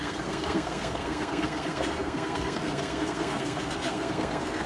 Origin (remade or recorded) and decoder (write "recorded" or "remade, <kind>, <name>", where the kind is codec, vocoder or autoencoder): remade, codec, SNAC